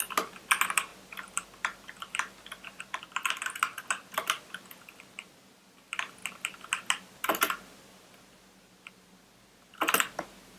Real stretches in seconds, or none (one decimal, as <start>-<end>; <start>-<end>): 0.0-10.6